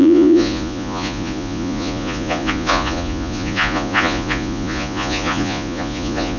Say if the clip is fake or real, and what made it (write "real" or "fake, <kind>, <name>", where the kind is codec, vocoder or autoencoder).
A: fake, vocoder, Vocos